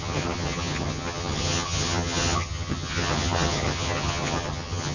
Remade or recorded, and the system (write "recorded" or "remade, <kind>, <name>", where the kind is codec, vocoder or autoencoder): remade, vocoder, HiFi-GAN